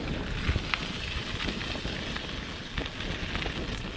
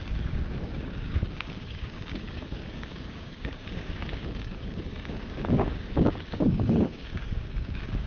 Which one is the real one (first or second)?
first